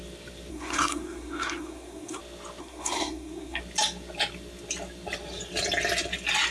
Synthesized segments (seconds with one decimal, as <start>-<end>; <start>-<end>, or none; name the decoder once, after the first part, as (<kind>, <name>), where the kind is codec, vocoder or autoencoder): 0.5-2.2 (codec, SNAC); 2.6-3.6